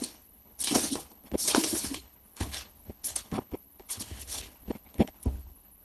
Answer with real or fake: fake